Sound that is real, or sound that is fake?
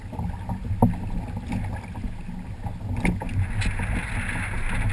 real